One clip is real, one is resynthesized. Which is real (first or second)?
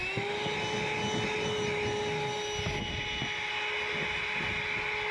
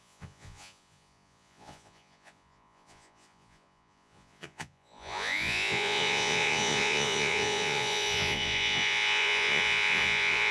first